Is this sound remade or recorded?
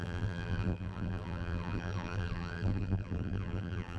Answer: remade